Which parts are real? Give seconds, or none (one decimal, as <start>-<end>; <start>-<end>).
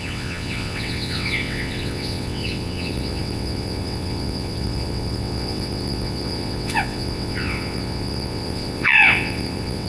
none